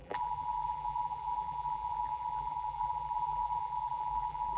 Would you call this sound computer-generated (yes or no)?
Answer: yes